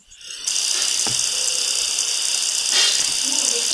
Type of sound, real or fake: real